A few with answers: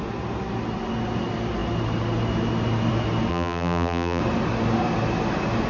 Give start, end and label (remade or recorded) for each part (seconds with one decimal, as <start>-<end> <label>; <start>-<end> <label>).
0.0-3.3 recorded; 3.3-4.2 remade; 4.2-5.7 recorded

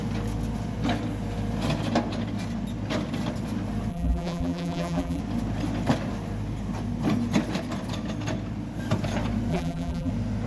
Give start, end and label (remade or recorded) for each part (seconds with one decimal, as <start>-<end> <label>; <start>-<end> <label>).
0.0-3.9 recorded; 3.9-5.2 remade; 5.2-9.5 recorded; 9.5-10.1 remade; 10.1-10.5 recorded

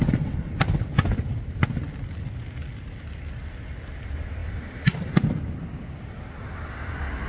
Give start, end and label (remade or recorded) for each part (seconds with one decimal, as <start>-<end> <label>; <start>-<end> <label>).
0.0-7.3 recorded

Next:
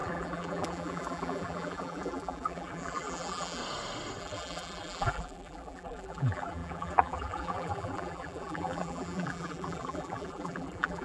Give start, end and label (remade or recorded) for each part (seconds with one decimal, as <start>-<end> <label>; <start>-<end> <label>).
0.0-3.6 remade; 3.6-4.2 recorded; 4.2-11.0 remade

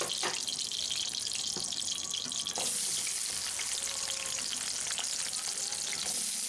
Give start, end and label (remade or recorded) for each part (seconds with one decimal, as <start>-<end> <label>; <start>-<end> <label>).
0.0-6.5 recorded